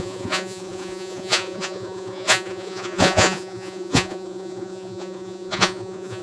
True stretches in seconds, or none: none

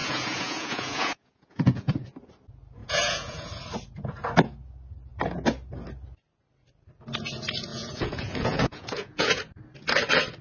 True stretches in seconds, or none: 1.9-2.8; 3.5-7.7; 9.4-10.4